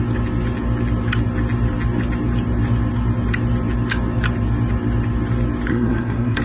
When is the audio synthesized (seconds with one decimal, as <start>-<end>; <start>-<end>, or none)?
5.7-6.4